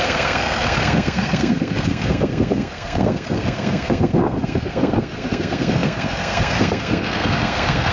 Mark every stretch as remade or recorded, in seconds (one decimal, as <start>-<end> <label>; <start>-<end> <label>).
0.0-7.9 remade